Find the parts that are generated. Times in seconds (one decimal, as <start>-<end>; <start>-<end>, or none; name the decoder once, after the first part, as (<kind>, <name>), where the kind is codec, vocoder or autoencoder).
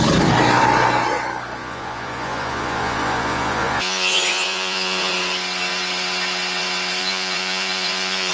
1.6-5.1 (vocoder, Vocos); 7.0-8.3